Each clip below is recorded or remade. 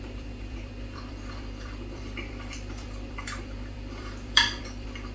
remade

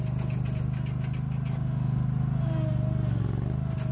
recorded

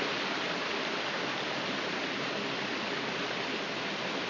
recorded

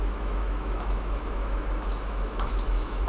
remade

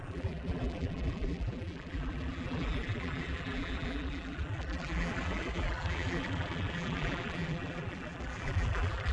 remade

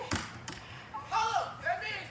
remade